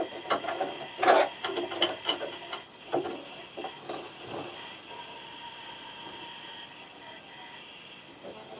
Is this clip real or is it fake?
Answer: real